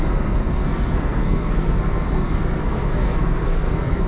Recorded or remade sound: remade